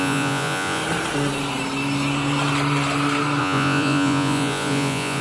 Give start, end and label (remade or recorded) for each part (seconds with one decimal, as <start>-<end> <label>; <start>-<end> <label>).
0.0-0.8 remade; 0.8-3.4 recorded; 3.4-5.2 remade